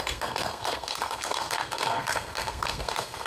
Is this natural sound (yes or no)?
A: no